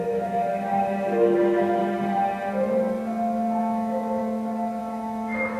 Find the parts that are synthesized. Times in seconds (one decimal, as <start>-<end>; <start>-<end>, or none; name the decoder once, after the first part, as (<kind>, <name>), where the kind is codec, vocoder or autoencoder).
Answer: 0.0-1.8 (autoencoder, DAC-VAE); 3.6-4.2; 4.8-5.6